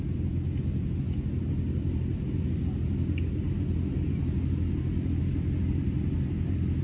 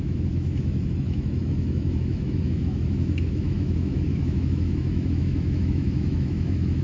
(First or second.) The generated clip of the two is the second